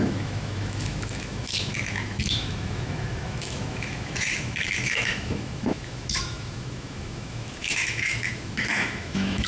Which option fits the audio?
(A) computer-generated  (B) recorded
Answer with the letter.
A